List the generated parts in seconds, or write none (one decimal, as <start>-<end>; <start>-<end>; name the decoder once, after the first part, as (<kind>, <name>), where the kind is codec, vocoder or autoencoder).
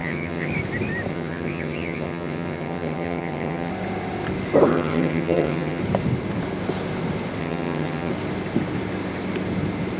0.0-0.5 (vocoder, HiFi-GAN); 1.1-3.7; 4.7-5.8; 7.4-8.1